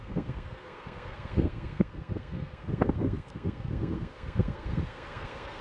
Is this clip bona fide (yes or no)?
no